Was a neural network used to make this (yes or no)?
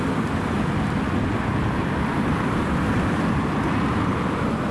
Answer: no